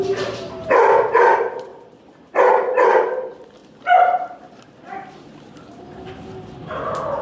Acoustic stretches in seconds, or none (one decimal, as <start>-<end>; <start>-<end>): 0.0-7.2